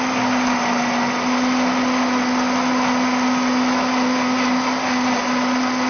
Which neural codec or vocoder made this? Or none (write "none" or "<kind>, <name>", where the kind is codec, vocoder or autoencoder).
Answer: none